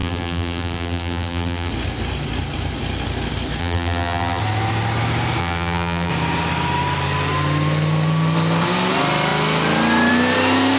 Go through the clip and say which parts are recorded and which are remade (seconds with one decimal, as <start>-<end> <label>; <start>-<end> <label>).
0.0-1.7 remade; 1.7-3.6 recorded; 3.6-4.4 remade; 4.4-5.4 recorded; 5.4-6.1 remade; 6.1-10.8 recorded